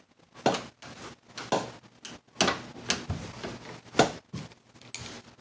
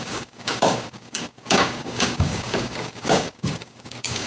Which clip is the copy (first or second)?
second